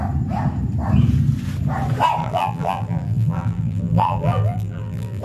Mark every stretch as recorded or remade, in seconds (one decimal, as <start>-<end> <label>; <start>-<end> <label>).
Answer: 0.0-2.2 recorded; 2.2-5.2 remade